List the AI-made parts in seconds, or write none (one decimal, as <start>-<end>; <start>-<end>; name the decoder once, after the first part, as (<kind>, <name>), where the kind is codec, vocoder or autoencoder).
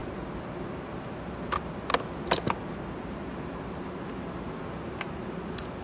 none